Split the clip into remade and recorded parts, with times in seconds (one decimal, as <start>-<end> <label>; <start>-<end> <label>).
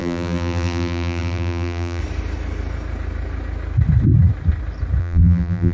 0.0-2.0 remade; 2.0-5.0 recorded; 5.0-5.7 remade